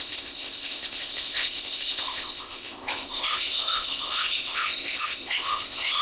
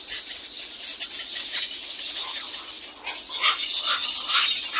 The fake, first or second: first